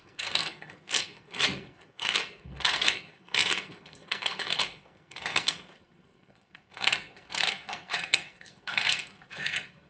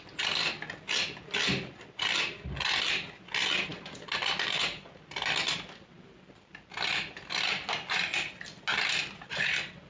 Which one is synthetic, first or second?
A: first